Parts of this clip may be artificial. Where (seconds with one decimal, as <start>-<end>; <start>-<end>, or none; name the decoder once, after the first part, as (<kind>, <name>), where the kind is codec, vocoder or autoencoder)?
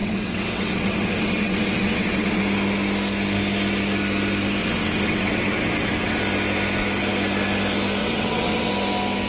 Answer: 0.0-2.4 (vocoder, WaveNeXt); 4.6-6.2; 8.0-8.7